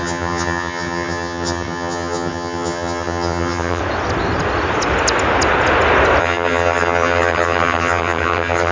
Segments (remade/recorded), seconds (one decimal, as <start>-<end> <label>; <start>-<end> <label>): 0.0-3.8 remade; 3.8-6.2 recorded; 6.2-8.7 remade